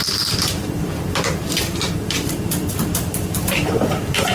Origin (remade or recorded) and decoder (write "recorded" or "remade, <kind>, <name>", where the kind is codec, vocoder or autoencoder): remade, vocoder, BigVGAN v2